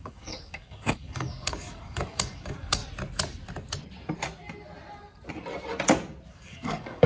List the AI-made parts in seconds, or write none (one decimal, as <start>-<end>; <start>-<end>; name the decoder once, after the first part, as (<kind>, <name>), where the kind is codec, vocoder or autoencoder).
0.0-2.8 (codec, DAC); 6.3-7.1